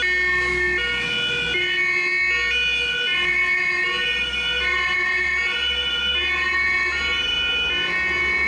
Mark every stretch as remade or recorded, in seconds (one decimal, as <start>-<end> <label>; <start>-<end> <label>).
0.0-8.5 recorded

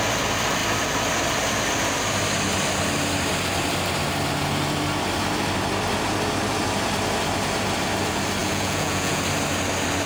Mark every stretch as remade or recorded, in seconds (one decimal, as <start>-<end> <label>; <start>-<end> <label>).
0.0-8.4 recorded; 8.4-9.2 remade; 9.2-10.1 recorded

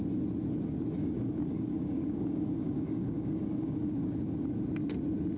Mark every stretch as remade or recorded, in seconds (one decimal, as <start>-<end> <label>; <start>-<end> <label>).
0.0-1.0 recorded; 1.0-3.9 remade; 3.9-5.4 recorded

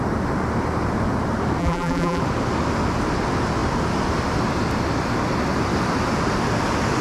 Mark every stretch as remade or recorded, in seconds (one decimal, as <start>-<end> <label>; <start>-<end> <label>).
0.0-1.6 recorded; 1.6-2.2 remade; 2.2-7.0 recorded